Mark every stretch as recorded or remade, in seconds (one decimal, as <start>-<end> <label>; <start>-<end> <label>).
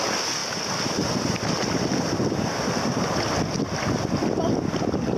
0.0-5.2 recorded